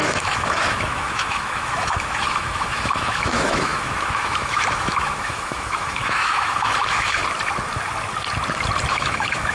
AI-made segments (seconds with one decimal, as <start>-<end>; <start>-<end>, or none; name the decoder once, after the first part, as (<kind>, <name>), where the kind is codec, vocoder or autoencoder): 0.0-7.2 (autoencoder, DAC-VAE); 8.9-9.5